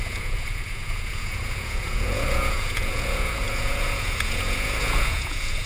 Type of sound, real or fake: fake